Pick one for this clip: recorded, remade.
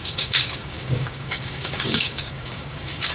remade